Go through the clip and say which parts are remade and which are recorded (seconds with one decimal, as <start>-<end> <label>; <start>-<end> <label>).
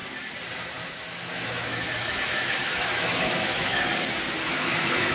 0.0-0.9 recorded; 0.9-3.9 remade; 3.9-4.5 recorded; 4.5-5.1 remade